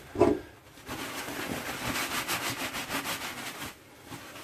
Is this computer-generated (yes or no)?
no